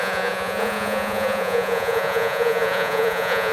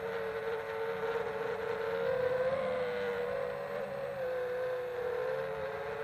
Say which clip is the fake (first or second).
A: first